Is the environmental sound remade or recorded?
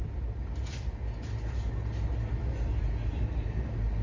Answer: recorded